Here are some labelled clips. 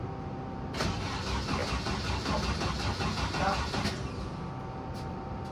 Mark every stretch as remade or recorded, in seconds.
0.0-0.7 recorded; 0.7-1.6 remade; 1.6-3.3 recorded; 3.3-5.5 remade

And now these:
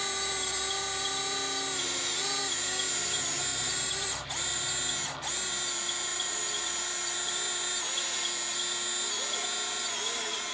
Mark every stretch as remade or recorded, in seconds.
0.0-3.5 recorded; 3.5-4.6 remade; 4.6-6.1 recorded; 6.1-7.3 remade; 7.3-10.5 recorded

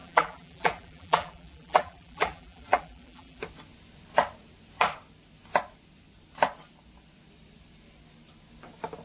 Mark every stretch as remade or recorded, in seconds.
0.0-3.4 remade; 3.4-9.0 recorded

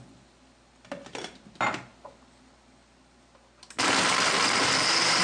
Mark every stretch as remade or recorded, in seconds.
0.0-5.2 recorded

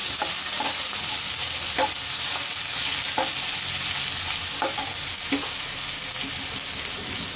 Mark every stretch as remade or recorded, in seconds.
0.0-7.4 recorded